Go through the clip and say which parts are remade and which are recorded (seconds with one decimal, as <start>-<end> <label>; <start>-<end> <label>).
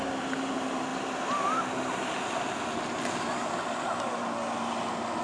0.0-5.2 recorded